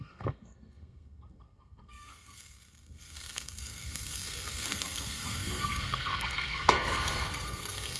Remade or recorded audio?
remade